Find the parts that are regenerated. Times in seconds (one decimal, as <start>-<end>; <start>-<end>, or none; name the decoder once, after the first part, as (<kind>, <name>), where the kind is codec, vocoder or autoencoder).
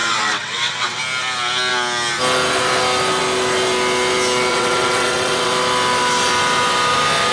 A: 0.0-1.0 (vocoder, WaveNeXt); 4.5-5.5